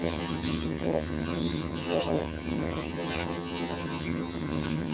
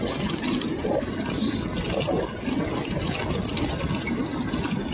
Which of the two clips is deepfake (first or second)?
first